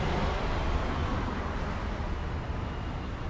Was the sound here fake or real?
real